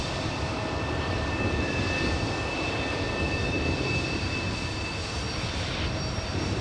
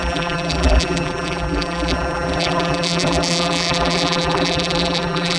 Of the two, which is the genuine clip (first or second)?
first